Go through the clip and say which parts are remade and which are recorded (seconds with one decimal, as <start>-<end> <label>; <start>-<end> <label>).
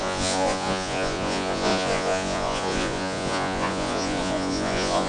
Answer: 0.0-5.1 remade